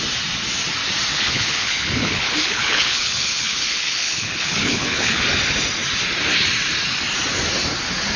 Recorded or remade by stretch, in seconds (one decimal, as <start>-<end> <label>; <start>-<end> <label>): 0.0-1.1 recorded; 1.1-5.2 remade; 5.2-8.2 recorded